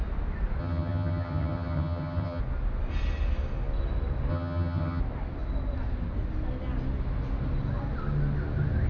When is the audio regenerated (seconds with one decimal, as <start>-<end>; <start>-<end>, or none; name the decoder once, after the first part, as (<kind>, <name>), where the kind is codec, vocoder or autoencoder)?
0.6-2.4 (vocoder, HiFi-GAN); 4.3-5.0